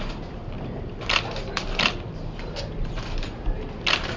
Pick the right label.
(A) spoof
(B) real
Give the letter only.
B